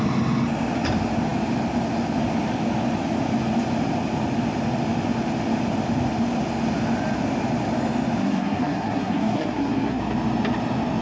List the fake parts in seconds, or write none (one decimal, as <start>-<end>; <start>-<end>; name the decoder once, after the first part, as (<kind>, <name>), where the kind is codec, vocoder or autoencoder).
8.2-10.0 (codec, SNAC)